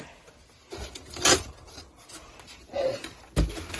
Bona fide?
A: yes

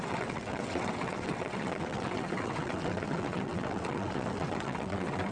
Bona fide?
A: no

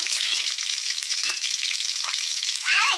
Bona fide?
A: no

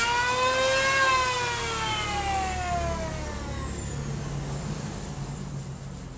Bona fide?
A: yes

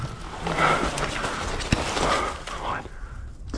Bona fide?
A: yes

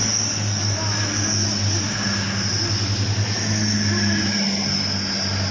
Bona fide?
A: yes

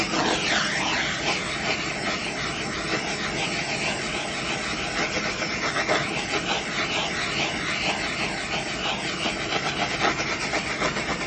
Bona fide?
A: yes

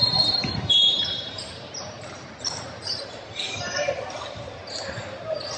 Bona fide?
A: no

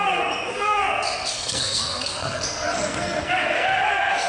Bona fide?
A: no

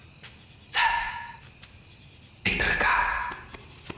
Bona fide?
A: yes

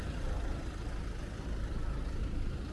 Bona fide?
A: yes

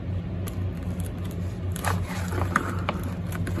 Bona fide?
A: yes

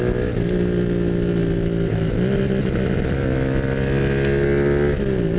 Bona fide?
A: yes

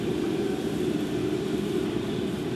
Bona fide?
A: yes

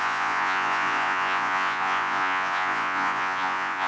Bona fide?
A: no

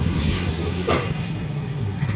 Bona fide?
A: no